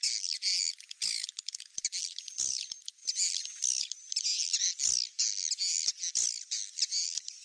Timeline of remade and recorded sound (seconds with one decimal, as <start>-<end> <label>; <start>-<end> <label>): 0.0-7.4 recorded